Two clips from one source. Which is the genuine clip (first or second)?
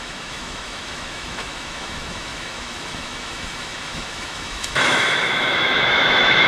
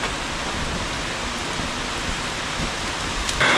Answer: second